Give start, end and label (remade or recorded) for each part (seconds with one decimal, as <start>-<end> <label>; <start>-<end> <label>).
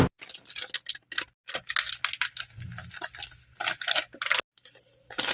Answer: 0.0-5.3 recorded